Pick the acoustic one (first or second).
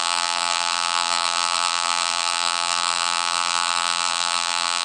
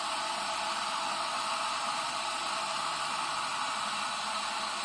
second